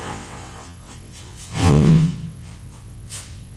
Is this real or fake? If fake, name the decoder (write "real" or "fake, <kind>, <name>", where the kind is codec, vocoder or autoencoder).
fake, vocoder, WaveNeXt